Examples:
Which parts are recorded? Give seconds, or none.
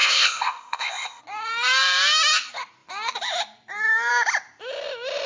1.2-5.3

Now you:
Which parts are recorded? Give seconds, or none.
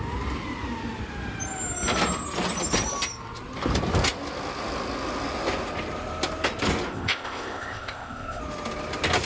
0.0-6.9; 8.4-9.3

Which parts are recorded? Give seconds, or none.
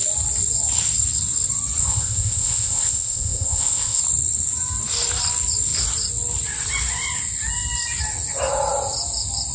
0.0-1.8; 4.0-9.5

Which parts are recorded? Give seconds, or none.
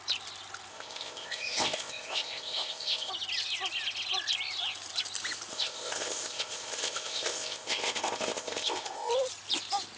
0.0-0.7; 3.1-5.5; 9.1-10.0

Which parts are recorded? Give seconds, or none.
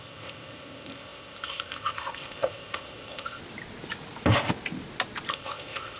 3.4-5.3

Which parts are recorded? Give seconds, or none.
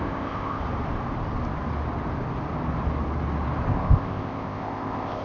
0.6-3.7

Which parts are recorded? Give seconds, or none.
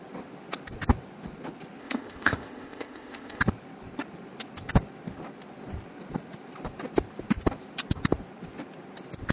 0.0-1.8; 3.4-9.3